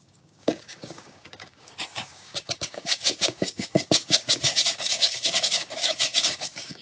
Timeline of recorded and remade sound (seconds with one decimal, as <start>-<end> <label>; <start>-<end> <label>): 0.0-6.8 remade